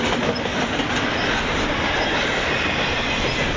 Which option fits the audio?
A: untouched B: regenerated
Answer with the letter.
A